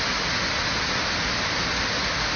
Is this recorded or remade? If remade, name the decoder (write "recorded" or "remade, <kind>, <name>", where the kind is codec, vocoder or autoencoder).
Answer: recorded